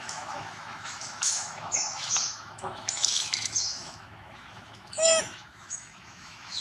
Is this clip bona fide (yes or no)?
no